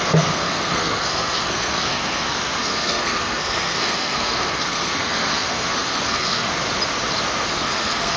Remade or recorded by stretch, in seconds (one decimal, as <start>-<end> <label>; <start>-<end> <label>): 0.0-6.5 remade; 6.5-7.5 recorded; 7.5-8.2 remade